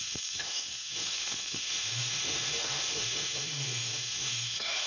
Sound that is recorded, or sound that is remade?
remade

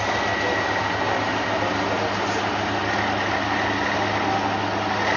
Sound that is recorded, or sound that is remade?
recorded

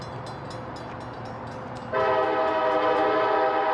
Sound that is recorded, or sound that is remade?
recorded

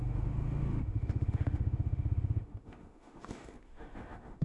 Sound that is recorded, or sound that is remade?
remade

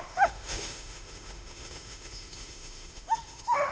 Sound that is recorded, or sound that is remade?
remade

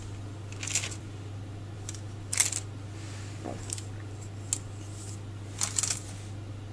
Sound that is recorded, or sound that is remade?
recorded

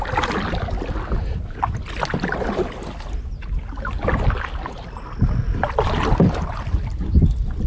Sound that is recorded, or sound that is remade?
recorded